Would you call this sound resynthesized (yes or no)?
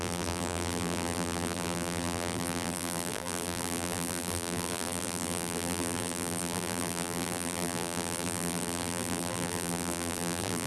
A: yes